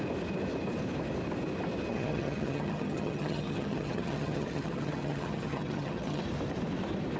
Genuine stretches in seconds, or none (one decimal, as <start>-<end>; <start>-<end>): 0.0-1.9; 6.2-7.2